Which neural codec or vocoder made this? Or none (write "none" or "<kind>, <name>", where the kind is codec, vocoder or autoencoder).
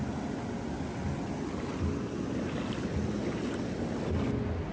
none